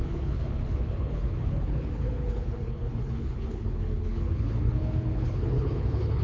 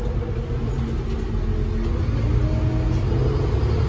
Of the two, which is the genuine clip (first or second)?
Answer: second